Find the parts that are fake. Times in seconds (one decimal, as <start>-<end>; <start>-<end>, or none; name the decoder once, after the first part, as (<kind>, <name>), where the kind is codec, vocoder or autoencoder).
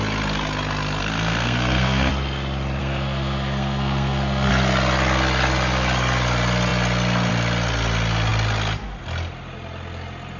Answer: 1.0-2.1 (codec, SNAC); 2.8-4.5